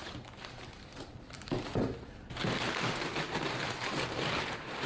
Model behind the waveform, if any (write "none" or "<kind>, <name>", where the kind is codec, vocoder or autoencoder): vocoder, BigVGAN v2